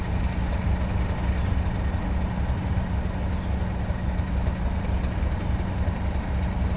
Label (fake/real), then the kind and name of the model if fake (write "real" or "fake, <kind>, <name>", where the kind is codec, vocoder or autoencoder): real